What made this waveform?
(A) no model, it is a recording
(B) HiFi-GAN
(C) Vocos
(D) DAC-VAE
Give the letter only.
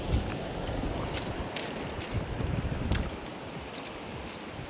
A